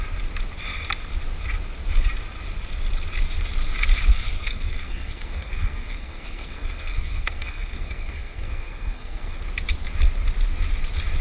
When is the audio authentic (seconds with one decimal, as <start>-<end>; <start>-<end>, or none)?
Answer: 0.0-4.1; 9.4-11.2